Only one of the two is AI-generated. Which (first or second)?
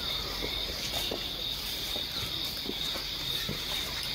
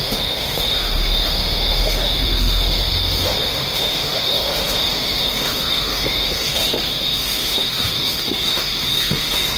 second